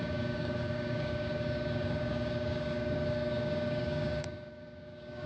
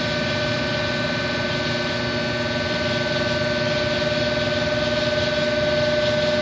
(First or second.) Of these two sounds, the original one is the second